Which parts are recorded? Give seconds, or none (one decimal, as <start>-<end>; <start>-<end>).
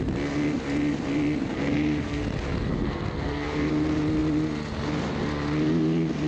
0.0-1.5; 2.2-2.7; 3.7-6.3